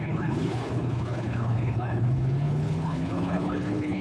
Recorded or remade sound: remade